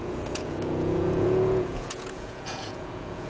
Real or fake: fake